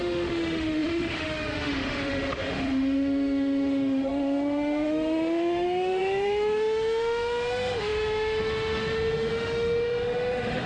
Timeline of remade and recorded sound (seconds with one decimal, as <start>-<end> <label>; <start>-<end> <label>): 0.0-10.7 remade